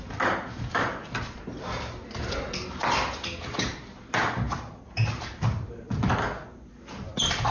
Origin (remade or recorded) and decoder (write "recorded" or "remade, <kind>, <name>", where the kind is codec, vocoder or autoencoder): recorded